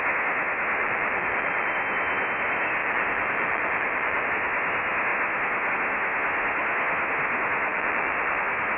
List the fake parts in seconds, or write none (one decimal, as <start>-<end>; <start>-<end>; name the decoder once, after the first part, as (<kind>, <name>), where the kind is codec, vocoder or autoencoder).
0.8-1.7 (vocoder, BigVGAN v2); 2.8-4.3; 7.7-8.4